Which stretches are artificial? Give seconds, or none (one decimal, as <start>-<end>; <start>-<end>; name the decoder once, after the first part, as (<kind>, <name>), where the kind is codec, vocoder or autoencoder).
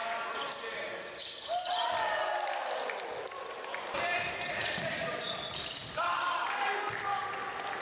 none